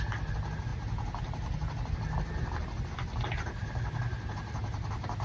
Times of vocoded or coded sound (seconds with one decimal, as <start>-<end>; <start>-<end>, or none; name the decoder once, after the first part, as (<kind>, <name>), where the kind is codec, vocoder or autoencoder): none